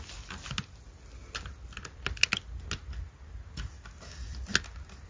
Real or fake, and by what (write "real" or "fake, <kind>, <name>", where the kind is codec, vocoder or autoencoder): real